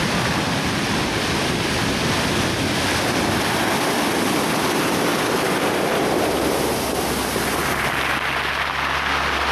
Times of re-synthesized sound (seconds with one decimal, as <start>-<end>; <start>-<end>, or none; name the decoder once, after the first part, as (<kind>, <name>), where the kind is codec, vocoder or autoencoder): 5.1-7.0 (vocoder, BigVGAN v2)